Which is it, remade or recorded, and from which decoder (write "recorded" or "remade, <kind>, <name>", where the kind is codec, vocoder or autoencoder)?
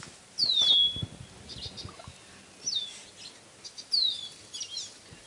recorded